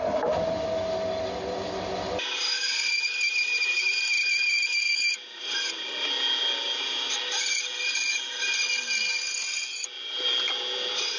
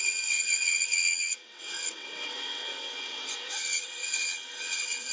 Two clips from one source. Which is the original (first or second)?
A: first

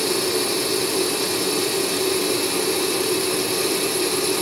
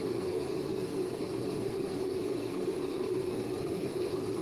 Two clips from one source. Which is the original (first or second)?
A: first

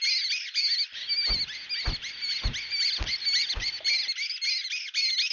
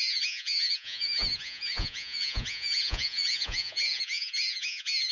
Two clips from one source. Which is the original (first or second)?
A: first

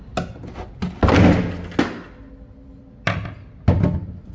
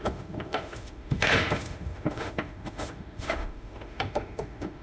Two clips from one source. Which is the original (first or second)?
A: first